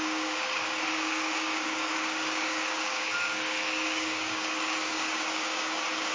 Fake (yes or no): yes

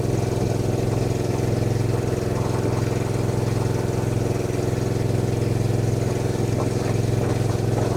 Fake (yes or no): no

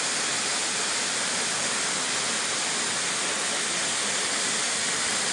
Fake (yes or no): no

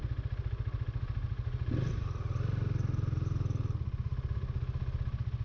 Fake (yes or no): no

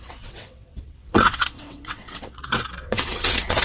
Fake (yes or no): yes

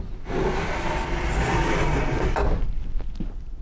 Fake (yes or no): no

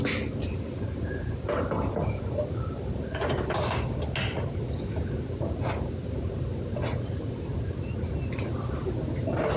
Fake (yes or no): no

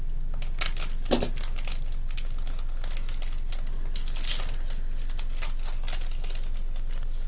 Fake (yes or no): no